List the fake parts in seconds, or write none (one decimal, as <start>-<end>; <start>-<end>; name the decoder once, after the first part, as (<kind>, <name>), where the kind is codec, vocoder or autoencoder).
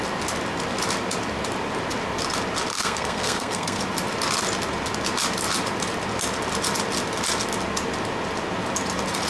2.7-3.8 (codec, SNAC)